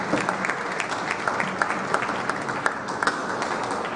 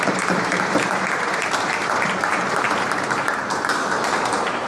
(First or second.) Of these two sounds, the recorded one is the first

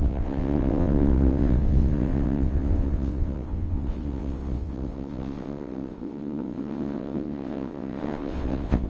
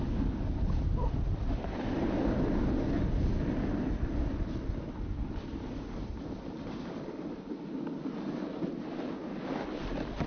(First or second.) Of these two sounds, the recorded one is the second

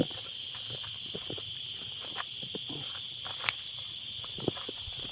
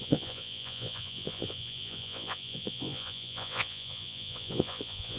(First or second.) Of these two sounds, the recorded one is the first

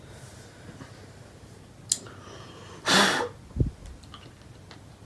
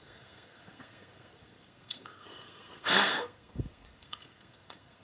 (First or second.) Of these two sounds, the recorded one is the first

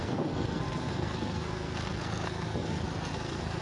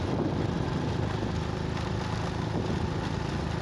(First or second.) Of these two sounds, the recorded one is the second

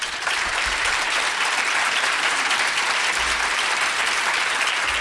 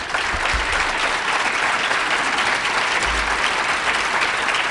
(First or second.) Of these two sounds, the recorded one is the second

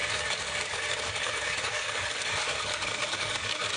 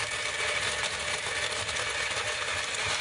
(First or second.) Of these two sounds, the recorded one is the second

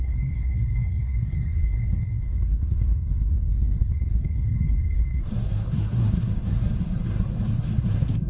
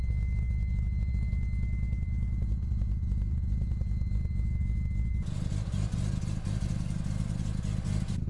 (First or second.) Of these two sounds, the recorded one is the second